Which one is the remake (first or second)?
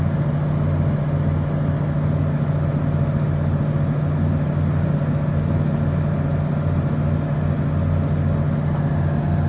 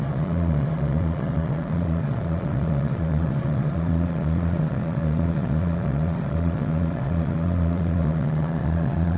second